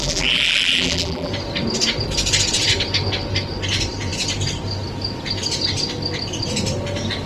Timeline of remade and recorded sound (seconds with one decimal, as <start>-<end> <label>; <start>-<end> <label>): 0.0-1.3 remade; 1.3-7.3 recorded